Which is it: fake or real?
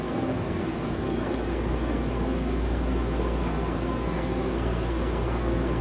fake